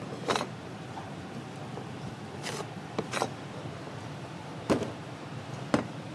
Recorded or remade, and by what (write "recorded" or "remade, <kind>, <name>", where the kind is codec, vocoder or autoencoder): remade, vocoder, BigVGAN v2